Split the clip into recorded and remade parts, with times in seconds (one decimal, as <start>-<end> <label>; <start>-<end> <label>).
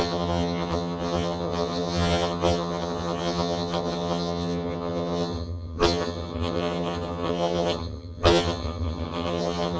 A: 0.0-9.8 remade